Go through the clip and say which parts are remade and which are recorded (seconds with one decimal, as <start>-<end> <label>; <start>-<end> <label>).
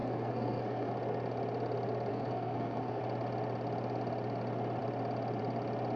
0.0-0.9 remade; 0.9-2.1 recorded; 2.1-3.0 remade; 3.0-6.0 recorded